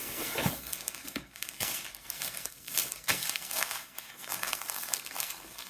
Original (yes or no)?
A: no